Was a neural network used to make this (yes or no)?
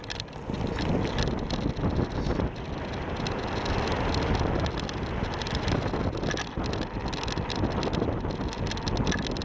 no